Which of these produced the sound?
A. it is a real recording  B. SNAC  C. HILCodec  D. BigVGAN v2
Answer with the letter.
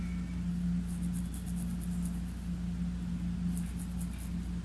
A